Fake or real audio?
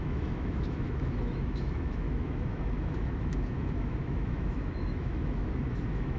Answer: fake